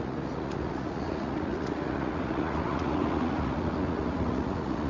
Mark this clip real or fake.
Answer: fake